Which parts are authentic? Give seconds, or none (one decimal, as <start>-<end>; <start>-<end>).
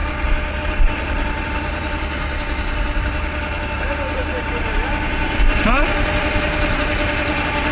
0.0-0.6